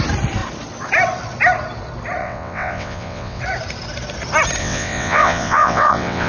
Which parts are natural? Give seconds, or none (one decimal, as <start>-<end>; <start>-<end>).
0.0-2.2; 3.4-4.6